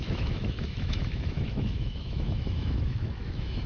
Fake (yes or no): yes